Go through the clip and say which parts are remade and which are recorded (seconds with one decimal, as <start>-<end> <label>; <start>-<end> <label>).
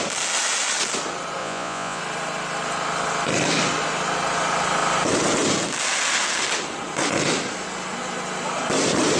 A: 0.0-1.4 recorded; 1.4-2.0 remade; 2.0-9.2 recorded